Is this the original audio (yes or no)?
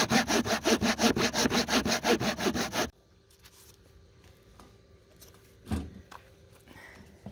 yes